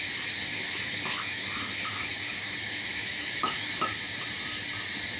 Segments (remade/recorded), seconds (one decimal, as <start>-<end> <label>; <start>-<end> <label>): 0.0-0.5 recorded; 0.5-3.6 remade; 3.6-5.2 recorded